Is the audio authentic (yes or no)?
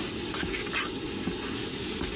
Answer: yes